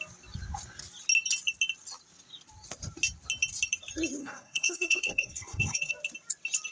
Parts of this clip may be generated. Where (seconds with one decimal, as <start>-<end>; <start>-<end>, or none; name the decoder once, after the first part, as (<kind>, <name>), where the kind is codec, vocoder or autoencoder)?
4.2-5.9 (codec, SNAC)

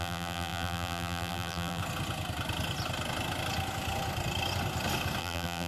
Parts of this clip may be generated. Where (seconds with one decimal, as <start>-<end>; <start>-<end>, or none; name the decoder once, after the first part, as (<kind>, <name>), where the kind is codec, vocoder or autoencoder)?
0.0-1.8 (vocoder, BigVGAN v2); 5.2-5.7

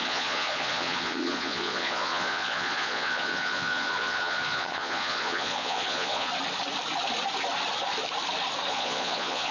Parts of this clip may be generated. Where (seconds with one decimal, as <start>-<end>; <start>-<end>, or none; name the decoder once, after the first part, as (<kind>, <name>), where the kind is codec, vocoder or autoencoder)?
0.0-6.3 (vocoder, Vocos); 8.7-9.5

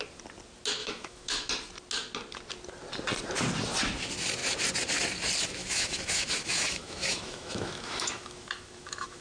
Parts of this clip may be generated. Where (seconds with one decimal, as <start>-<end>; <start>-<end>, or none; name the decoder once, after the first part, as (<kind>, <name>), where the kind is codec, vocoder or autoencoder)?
0.8-1.5 (autoencoder, DAC-VAE); 5.6-9.2

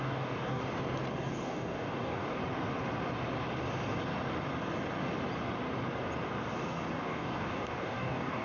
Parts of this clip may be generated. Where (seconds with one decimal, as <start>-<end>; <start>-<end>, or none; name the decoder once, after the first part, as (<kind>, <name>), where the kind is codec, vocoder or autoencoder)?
0.0-0.6 (codec, DAC); 1.3-2.4; 6.9-8.4